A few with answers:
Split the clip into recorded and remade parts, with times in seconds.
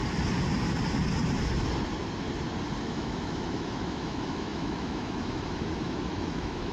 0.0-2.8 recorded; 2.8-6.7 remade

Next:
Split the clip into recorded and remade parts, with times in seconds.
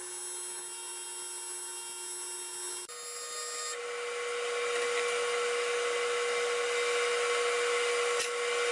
0.0-8.7 recorded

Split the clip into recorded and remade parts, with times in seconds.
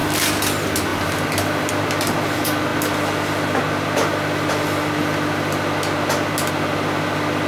0.0-7.5 recorded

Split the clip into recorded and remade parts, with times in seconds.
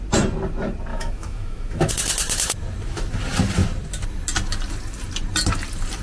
0.0-0.9 recorded; 0.9-1.9 remade; 1.9-6.0 recorded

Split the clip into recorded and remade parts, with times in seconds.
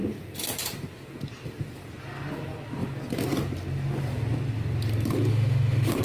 0.0-5.3 recorded; 5.3-6.0 remade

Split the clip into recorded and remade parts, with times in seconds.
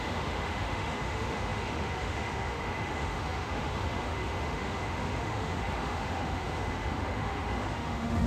0.0-8.3 remade